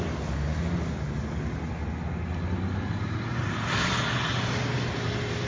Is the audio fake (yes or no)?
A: no